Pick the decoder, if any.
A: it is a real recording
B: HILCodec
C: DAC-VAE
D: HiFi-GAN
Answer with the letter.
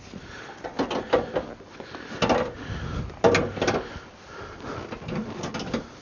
A